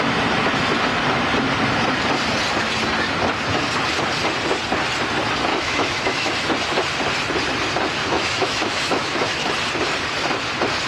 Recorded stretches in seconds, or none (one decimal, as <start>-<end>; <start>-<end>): 0.0-5.5; 6.3-8.0; 9.5-10.9